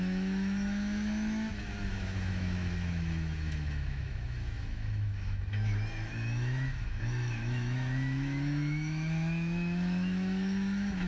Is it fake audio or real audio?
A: fake